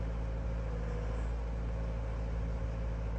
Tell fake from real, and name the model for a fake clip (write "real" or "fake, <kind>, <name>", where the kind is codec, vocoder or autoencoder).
real